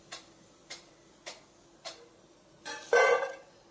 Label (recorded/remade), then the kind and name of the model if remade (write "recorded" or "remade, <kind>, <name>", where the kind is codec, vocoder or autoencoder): recorded